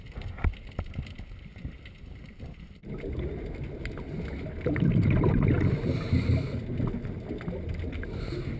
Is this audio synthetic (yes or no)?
no